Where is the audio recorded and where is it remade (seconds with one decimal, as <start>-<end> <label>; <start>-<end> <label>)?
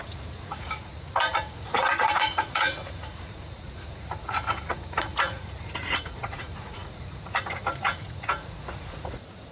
0.0-9.5 remade